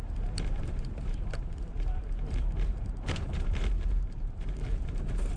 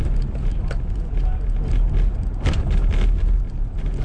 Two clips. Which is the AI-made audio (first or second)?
first